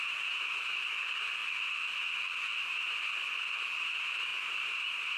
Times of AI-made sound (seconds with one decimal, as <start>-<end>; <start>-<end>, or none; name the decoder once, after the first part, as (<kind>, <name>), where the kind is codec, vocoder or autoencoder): 0.0-1.4 (vocoder, BigVGAN v2); 2.7-3.1; 3.6-5.2